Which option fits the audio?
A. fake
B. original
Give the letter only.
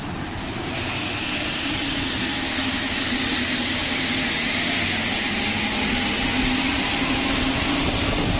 B